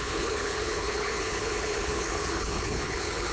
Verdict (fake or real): fake